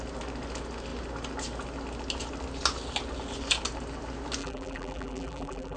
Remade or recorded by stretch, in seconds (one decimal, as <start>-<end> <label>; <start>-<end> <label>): 0.0-4.4 recorded; 4.4-5.8 remade